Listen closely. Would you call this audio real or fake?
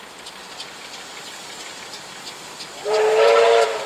real